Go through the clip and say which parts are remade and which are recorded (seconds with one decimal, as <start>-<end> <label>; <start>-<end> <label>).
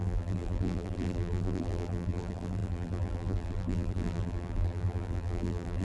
0.0-5.8 remade